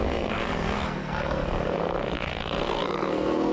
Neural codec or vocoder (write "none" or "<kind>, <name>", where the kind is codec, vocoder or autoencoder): codec, SNAC